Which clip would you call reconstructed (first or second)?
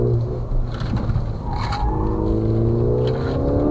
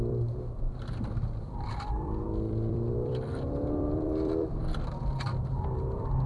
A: second